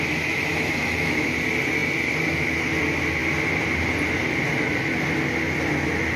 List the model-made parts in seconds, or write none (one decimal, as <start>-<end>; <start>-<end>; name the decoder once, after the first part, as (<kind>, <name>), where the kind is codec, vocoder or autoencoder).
0.5-1.2 (autoencoder, DAC-VAE)